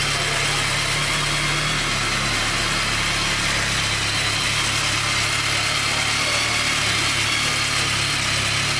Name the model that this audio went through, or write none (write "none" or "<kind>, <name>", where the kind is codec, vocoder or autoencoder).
none